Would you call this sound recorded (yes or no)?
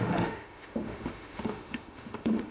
no